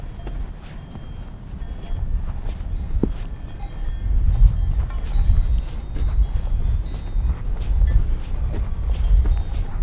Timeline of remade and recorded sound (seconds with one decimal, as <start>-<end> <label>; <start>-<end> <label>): 0.0-9.8 recorded